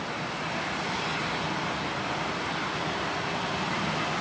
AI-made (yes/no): no